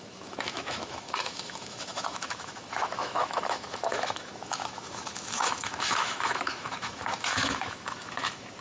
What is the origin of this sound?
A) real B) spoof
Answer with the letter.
B